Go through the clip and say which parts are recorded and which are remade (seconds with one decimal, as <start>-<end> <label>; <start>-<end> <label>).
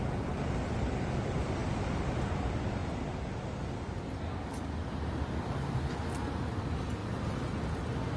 0.0-8.2 recorded